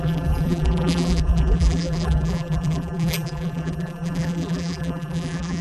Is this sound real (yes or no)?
no